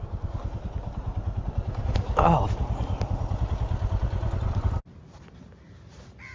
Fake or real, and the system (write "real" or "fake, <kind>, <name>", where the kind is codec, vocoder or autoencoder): real